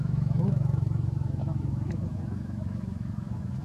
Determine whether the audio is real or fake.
fake